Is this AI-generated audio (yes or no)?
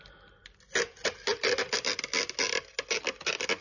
no